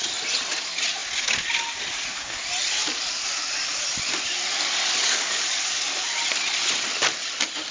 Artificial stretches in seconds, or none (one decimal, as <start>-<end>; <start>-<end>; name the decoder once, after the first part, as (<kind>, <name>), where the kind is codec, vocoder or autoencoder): 4.8-5.4 (codec, DAC)